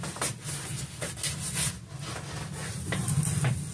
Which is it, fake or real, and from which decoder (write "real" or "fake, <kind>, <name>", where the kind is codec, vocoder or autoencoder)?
real